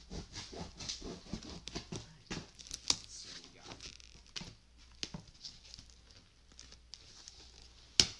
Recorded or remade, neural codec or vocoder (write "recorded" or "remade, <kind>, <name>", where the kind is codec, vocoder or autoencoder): recorded